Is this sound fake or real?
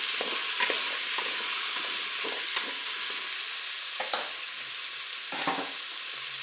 real